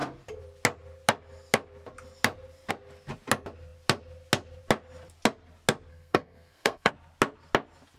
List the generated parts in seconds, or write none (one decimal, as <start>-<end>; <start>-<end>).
5.9-6.9